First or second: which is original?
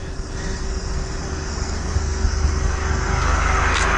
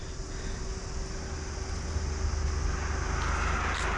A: second